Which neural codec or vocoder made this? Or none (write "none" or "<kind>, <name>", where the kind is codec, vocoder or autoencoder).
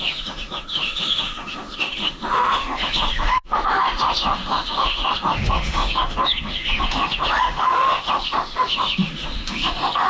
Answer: autoencoder, DAC-VAE